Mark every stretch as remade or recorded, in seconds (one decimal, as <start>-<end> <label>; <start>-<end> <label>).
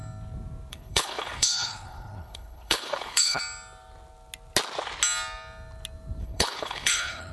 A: 0.0-0.7 recorded; 0.7-3.4 remade; 3.4-6.2 recorded; 6.2-7.3 remade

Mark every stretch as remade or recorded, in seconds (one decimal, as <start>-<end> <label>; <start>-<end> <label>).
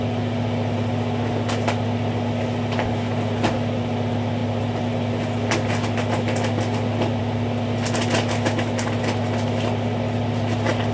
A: 0.0-10.9 recorded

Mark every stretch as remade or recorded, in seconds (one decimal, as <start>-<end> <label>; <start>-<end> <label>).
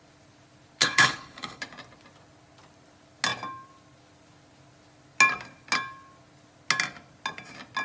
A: 0.0-0.8 recorded; 0.8-1.6 remade; 1.6-7.8 recorded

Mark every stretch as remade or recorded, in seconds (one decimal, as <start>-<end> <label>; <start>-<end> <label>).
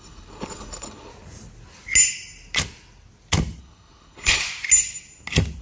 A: 0.0-1.1 remade; 1.1-3.6 recorded; 3.6-4.4 remade; 4.4-5.6 recorded